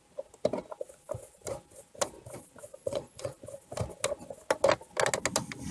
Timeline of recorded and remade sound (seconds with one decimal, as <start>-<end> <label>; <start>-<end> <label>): 0.0-2.7 recorded; 2.7-3.3 remade; 3.3-5.7 recorded